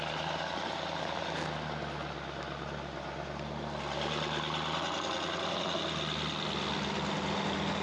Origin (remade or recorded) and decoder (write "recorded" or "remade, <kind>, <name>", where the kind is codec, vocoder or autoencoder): recorded